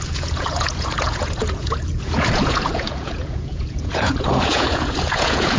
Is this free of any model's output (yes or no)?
no